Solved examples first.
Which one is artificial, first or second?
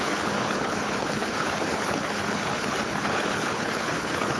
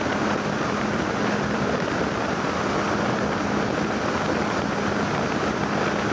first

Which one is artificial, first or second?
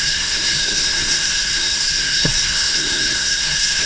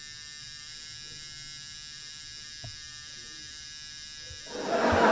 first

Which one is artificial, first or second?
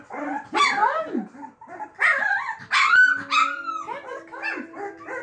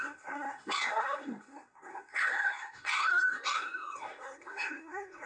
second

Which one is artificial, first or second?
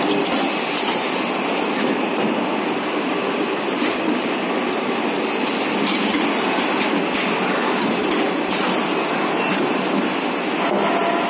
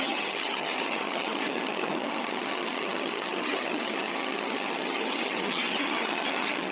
second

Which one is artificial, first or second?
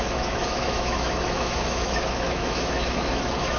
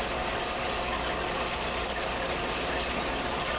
first